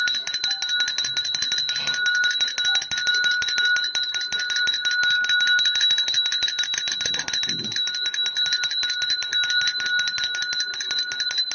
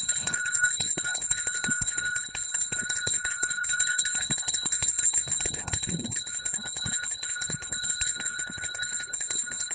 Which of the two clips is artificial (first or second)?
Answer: second